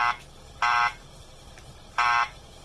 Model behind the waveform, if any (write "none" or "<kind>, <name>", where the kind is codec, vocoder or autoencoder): vocoder, BigVGAN v2